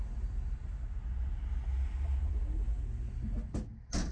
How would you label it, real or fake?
real